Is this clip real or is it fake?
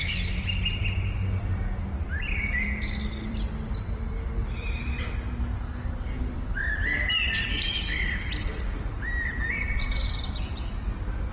fake